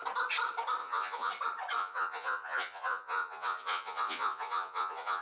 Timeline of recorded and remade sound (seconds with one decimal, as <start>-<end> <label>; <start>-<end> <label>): 0.0-0.8 recorded; 0.8-1.3 remade; 1.3-1.8 recorded; 1.8-5.2 remade